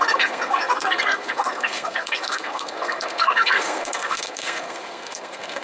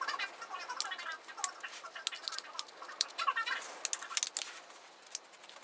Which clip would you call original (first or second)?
second